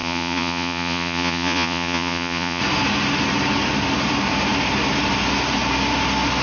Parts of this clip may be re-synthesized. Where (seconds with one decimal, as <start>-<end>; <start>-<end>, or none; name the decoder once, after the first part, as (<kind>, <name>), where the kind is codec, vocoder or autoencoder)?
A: 0.0-2.6 (vocoder, Vocos)